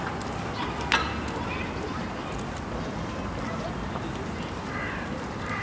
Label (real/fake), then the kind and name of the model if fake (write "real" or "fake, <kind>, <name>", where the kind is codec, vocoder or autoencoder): real